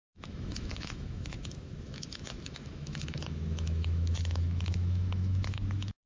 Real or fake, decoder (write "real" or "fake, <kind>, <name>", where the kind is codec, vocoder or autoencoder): fake, autoencoder, DAC-VAE